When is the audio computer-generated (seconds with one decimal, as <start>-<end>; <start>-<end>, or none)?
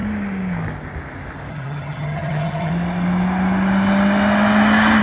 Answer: 1.5-2.7